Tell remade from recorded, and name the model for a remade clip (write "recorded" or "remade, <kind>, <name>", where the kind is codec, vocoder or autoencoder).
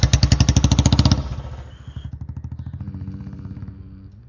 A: recorded